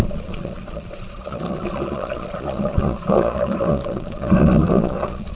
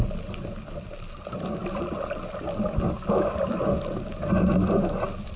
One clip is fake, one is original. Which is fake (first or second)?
first